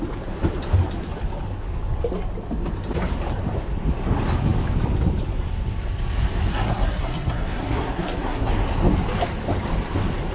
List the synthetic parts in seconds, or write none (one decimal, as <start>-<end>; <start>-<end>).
6.5-8.5